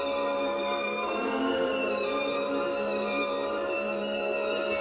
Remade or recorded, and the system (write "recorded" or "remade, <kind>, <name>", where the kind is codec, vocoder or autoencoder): remade, vocoder, BigVGAN v2